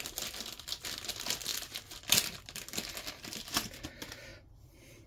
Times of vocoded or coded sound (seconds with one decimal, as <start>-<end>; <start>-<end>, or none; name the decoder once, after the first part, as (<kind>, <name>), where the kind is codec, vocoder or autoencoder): none